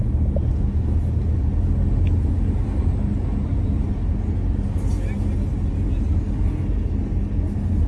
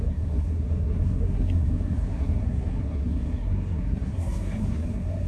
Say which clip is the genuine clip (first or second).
first